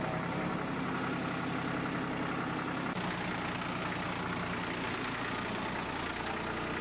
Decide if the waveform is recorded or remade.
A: recorded